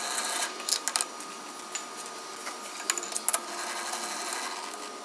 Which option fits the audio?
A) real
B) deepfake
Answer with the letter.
A